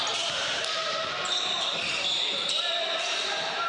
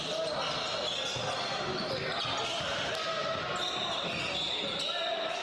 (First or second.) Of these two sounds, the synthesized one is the first